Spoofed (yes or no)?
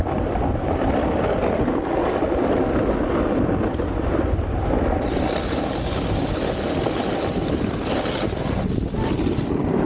no